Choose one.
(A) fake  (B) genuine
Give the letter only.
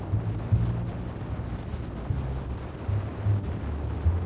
B